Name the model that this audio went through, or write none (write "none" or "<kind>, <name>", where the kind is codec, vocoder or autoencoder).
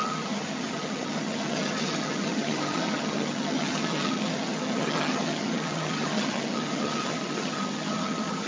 vocoder, HiFi-GAN